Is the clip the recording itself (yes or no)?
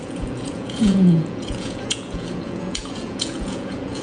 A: no